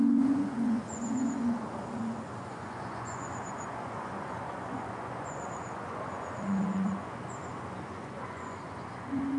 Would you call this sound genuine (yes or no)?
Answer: no